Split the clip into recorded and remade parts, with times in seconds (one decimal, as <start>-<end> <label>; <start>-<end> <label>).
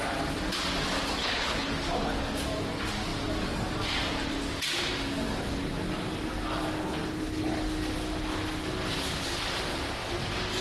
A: 0.0-1.2 recorded; 1.2-1.7 remade; 1.7-6.8 recorded; 6.8-7.6 remade; 7.6-10.6 recorded